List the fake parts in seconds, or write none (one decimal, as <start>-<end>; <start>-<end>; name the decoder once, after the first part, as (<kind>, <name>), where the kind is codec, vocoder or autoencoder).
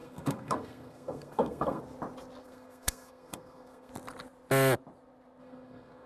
0.0-1.8 (codec, SNAC); 2.4-3.9; 5.4-6.1